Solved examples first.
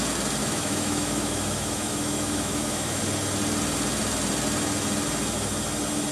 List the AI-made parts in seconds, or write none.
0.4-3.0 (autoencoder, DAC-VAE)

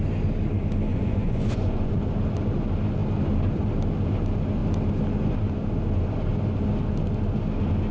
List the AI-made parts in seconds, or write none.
0.9-2.0 (vocoder, Vocos)

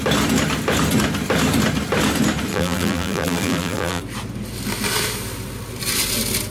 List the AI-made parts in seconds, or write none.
2.5-4.0 (vocoder, BigVGAN v2)